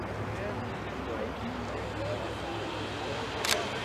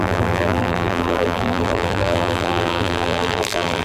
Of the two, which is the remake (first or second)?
second